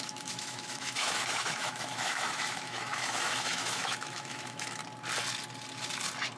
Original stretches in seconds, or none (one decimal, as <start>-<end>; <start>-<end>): 4.8-6.4